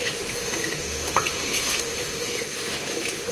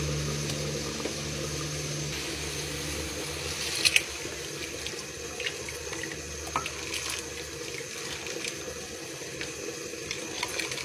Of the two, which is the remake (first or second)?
first